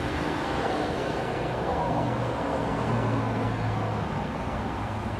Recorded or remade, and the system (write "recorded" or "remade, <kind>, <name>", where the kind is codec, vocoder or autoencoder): remade, codec, SNAC